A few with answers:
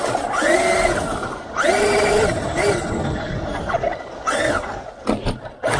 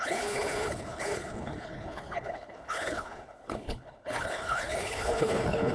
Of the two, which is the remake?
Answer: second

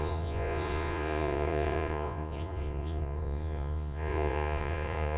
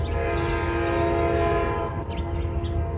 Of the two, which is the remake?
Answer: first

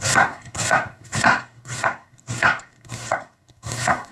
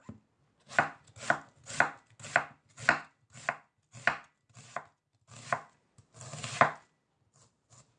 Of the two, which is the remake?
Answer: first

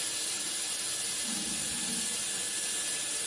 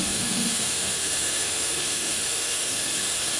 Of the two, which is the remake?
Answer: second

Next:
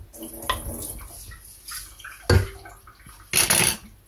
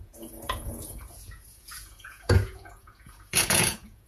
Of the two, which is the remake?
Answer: second